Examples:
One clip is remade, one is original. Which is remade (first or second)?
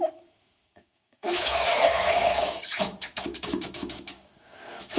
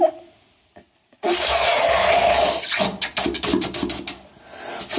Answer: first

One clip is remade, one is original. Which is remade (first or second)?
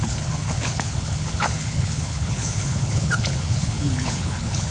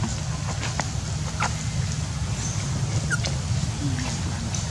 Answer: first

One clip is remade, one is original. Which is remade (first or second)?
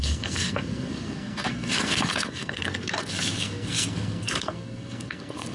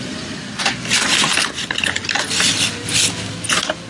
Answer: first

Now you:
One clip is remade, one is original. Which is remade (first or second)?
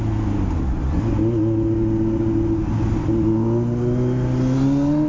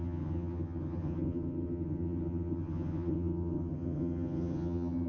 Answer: second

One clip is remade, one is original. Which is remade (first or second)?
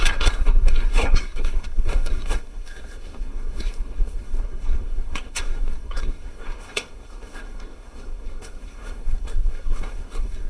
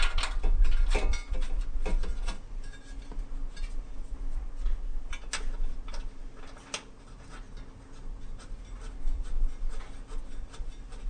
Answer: first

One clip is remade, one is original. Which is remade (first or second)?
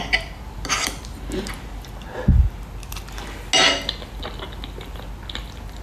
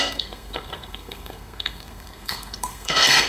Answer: second